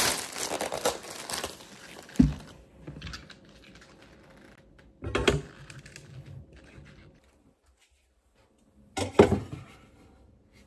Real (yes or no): yes